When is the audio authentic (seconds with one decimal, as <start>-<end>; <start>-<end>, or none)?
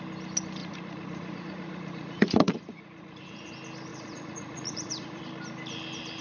0.0-0.6; 3.5-3.9; 5.2-6.2